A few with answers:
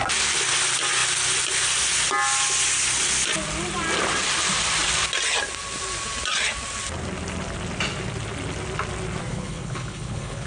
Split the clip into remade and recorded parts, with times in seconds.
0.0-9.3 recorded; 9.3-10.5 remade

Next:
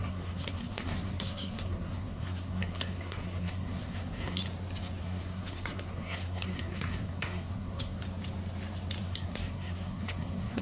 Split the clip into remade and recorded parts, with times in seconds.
0.0-4.4 remade; 4.4-5.0 recorded; 5.0-8.0 remade; 8.0-9.0 recorded; 9.0-10.6 remade

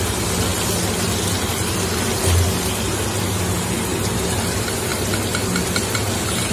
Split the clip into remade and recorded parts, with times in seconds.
0.0-0.5 recorded; 0.5-2.7 remade; 2.7-6.5 recorded